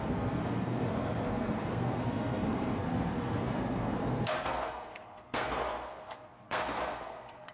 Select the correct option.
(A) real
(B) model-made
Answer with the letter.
B